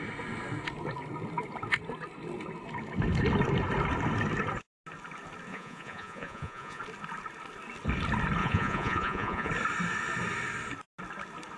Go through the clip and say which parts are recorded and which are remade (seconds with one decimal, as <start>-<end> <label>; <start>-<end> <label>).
0.0-5.5 recorded; 5.5-6.8 remade; 6.8-8.4 recorded; 8.4-9.5 remade; 9.5-11.6 recorded